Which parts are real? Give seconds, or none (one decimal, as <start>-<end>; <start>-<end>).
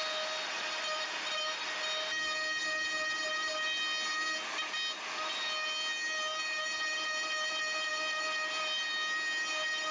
0.0-9.9